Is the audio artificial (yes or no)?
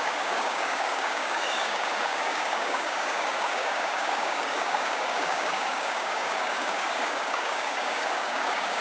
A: yes